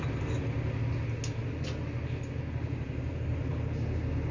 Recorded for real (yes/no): yes